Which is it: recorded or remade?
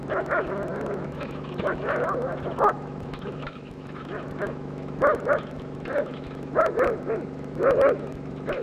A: remade